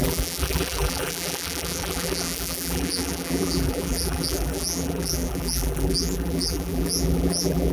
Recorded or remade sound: remade